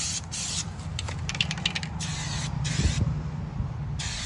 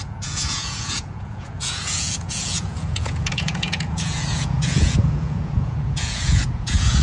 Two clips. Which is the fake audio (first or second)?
second